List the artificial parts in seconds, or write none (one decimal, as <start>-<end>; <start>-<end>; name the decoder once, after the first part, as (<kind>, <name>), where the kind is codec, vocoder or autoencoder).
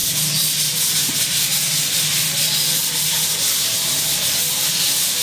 none